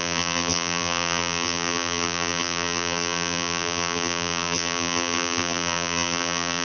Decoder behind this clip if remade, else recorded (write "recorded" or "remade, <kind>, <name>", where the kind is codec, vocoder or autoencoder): remade, vocoder, BigVGAN v2